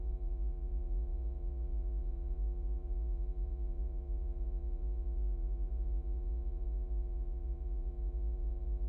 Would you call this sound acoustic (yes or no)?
no